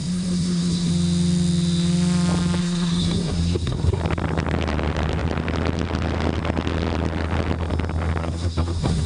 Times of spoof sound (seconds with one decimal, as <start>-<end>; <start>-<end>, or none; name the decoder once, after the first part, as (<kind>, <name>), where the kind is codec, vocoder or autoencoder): 0.0-0.9 (codec, SNAC); 2.6-4.0; 8.2-9.1